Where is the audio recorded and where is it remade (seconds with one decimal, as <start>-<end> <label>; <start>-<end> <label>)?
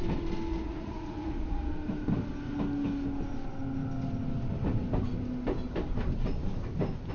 0.0-0.5 recorded; 0.5-1.7 remade; 1.7-7.1 recorded